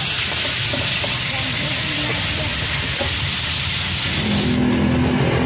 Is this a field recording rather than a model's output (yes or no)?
yes